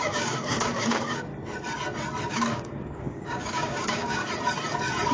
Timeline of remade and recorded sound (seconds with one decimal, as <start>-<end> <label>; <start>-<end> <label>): 0.0-1.3 remade; 1.3-2.3 recorded; 2.3-4.2 remade; 4.2-5.1 recorded